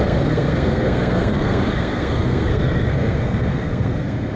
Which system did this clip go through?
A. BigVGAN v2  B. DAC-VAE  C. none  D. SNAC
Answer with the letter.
D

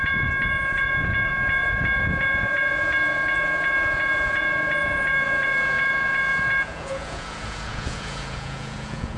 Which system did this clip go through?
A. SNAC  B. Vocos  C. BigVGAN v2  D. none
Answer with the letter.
B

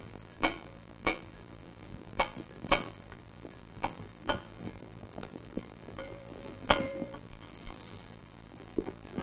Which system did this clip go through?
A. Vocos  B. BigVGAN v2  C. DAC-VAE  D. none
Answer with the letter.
B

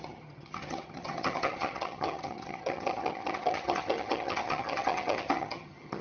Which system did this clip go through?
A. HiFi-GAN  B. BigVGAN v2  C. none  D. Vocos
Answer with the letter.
A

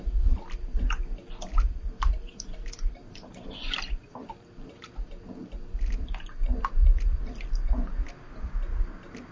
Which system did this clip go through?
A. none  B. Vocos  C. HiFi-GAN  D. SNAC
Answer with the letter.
A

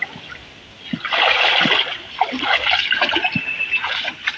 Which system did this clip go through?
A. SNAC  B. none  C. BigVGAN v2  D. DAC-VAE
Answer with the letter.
B